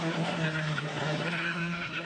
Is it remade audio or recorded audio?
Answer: remade